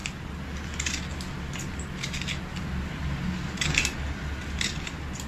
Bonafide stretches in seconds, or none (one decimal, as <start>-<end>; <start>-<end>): 0.0-5.3